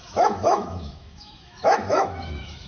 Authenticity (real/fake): fake